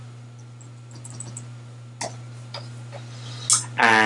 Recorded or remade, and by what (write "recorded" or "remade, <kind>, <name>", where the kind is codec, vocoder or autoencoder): recorded